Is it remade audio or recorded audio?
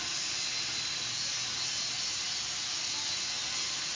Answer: recorded